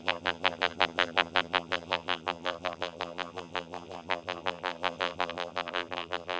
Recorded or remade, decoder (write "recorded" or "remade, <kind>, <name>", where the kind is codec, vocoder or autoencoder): remade, vocoder, BigVGAN v2